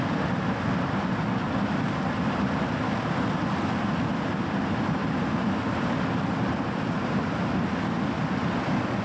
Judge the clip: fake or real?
real